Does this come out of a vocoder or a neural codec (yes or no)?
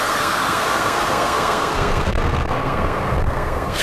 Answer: yes